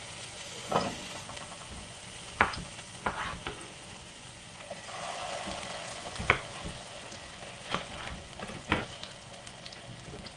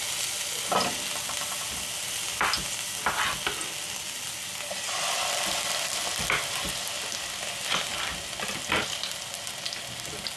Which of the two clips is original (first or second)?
second